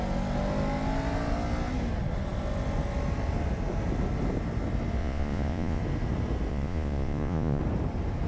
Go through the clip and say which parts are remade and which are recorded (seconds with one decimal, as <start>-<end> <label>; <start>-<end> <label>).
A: 0.0-5.0 recorded; 5.0-5.8 remade; 5.8-6.5 recorded; 6.5-7.6 remade; 7.6-8.3 recorded